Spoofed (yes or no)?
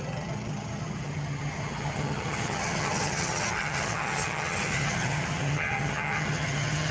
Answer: yes